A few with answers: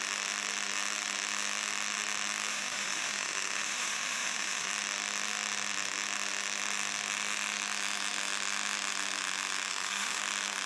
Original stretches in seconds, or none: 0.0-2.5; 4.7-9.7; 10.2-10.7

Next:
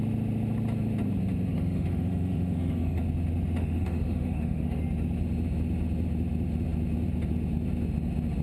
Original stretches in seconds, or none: 0.0-1.5; 3.0-3.6; 4.8-8.4